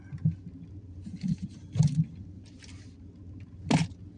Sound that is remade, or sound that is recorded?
recorded